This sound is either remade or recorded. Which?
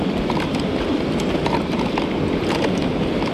remade